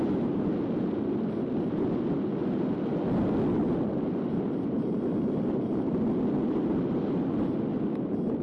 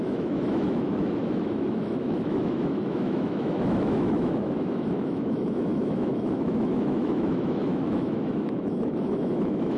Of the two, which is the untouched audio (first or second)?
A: first